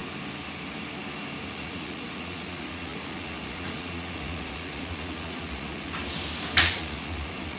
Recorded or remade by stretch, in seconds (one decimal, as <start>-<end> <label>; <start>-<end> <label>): 0.0-1.5 recorded; 1.5-5.9 remade; 5.9-6.6 recorded; 6.6-7.6 remade